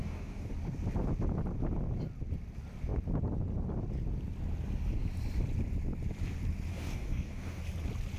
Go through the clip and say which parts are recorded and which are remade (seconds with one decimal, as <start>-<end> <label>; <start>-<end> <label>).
0.0-0.5 remade; 0.5-6.7 recorded; 6.7-7.6 remade; 7.6-8.2 recorded